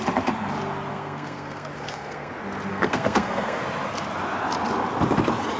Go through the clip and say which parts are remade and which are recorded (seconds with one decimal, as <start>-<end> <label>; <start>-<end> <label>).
0.0-0.9 recorded; 0.9-2.3 remade; 2.3-2.7 recorded; 2.7-3.6 remade; 3.6-5.6 recorded